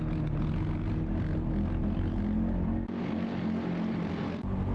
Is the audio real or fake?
real